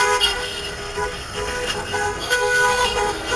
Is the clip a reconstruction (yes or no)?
yes